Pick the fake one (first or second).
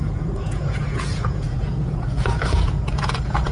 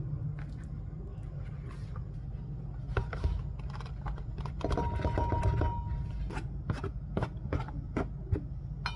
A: first